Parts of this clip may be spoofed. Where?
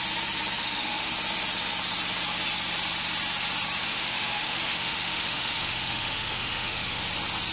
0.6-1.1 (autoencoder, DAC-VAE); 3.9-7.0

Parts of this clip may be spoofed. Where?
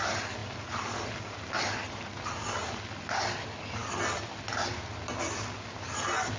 none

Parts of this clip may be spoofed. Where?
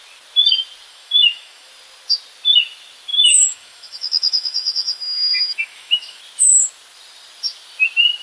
0.9-1.7 (autoencoder, DAC-VAE); 3.1-6.2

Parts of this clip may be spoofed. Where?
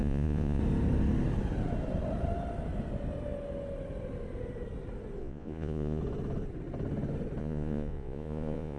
0.0-0.6 (vocoder, Vocos); 5.2-6.0; 7.4-8.8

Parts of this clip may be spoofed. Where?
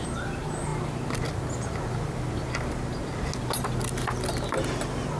none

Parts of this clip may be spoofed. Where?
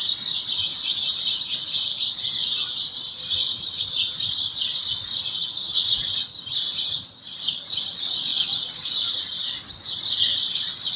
none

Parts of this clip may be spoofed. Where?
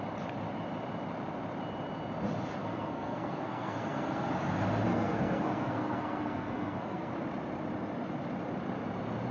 2.6-4.3 (codec, SNAC); 4.9-7.1